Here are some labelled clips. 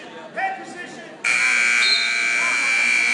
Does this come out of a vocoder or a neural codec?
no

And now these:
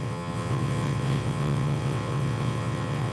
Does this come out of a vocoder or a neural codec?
yes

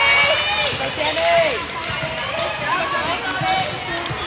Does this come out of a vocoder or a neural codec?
no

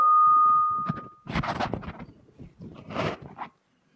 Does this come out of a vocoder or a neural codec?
no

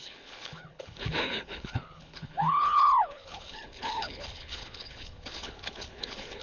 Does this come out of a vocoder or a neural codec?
yes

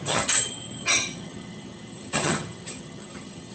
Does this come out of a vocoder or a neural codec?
yes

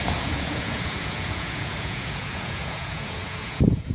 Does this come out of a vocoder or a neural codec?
yes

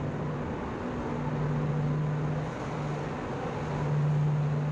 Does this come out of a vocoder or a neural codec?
no